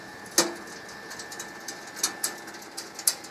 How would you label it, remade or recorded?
recorded